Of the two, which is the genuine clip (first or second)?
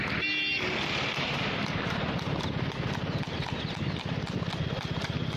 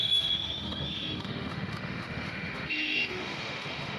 first